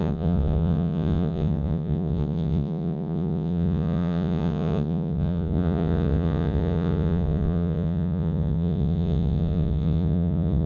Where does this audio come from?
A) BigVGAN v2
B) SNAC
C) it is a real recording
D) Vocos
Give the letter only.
D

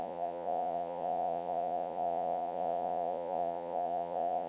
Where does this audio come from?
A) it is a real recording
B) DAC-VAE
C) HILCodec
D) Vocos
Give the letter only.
D